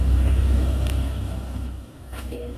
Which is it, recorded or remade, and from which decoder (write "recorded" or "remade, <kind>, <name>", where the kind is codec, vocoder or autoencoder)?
remade, codec, DAC